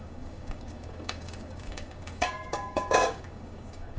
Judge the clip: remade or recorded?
remade